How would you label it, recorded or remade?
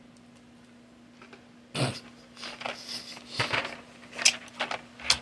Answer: recorded